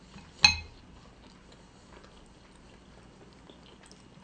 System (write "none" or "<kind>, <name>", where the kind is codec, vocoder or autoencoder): none